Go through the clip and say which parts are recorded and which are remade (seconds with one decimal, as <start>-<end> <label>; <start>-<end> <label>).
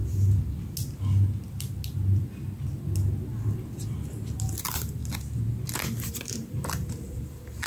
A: 0.0-4.6 recorded; 4.6-5.0 remade; 5.0-5.8 recorded; 5.8-7.7 remade